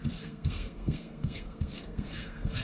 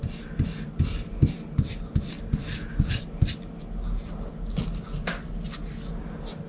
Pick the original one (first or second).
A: second